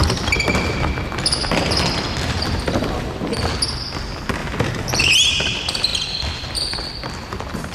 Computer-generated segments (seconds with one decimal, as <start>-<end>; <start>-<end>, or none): none